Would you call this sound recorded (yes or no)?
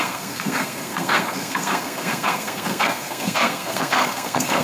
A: no